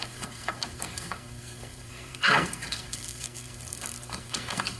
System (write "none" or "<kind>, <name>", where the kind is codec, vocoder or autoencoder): codec, SNAC